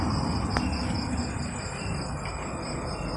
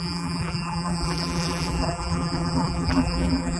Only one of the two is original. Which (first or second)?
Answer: first